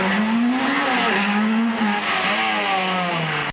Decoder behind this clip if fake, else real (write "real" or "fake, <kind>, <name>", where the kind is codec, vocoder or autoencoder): real